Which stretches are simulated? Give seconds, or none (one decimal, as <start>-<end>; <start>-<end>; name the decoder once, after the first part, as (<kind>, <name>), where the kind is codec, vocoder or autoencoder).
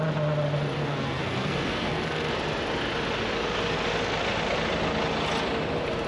0.8-2.3 (codec, SNAC)